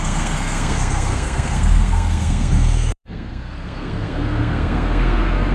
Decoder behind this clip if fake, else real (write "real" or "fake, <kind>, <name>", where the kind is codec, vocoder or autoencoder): fake, codec, SNAC